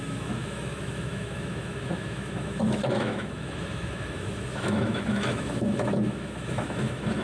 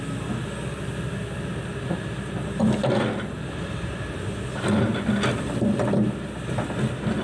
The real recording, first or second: second